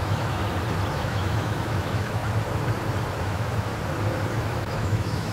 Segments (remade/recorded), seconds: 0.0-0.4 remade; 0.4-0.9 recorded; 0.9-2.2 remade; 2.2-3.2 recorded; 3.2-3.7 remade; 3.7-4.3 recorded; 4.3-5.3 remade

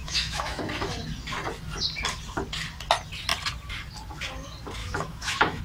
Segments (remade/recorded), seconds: 0.0-0.6 remade; 0.6-4.8 recorded; 4.8-5.6 remade